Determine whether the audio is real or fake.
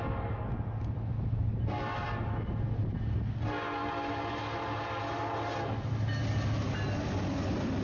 real